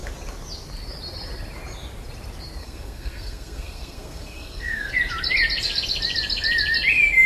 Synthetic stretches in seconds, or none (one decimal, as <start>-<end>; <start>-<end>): 2.6-4.9

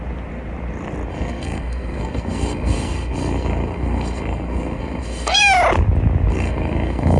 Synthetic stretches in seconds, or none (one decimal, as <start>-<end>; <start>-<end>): 1.1-5.4; 6.3-7.2

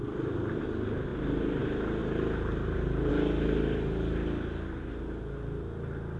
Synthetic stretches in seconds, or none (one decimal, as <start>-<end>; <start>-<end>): none

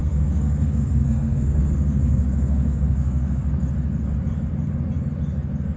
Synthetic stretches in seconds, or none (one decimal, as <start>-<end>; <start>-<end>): 0.0-3.4

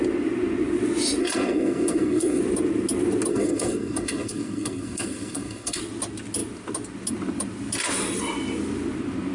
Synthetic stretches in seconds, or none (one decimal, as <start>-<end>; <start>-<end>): 1.2-2.4; 3.3-5.8